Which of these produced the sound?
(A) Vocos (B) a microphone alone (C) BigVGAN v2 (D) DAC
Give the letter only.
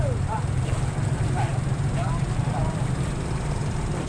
C